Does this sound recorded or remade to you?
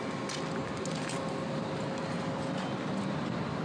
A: recorded